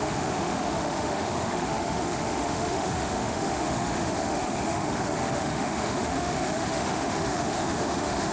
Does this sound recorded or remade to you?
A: remade